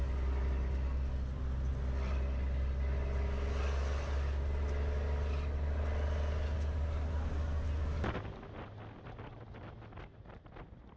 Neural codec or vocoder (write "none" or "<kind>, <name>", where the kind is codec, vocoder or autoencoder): none